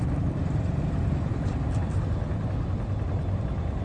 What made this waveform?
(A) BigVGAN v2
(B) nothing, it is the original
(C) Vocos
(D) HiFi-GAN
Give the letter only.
B